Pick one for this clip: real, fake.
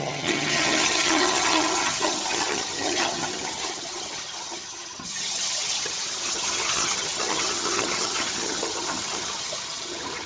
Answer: fake